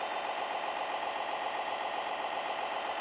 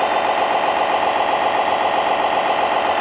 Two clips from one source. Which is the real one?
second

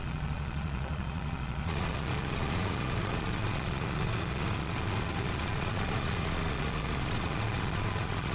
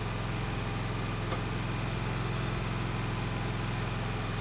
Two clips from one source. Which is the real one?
second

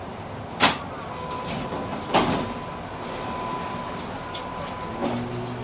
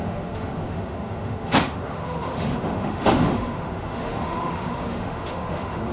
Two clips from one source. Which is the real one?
first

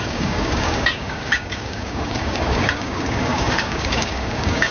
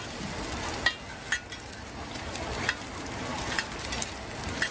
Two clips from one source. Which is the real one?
second